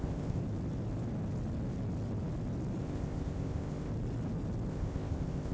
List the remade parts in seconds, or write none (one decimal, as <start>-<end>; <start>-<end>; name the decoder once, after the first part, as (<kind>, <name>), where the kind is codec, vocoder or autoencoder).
0.0-0.4 (codec, ZipCodec); 2.8-3.9; 4.7-5.5